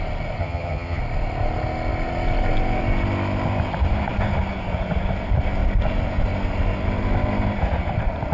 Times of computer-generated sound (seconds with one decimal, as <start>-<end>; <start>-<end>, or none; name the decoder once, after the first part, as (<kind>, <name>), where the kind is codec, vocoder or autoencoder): 0.4-1.0 (vocoder, HiFi-GAN)